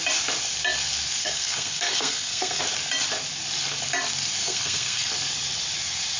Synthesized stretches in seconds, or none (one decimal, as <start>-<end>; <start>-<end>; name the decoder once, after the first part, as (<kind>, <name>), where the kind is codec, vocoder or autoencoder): 1.2-2.6 (codec, SNAC); 4.4-5.1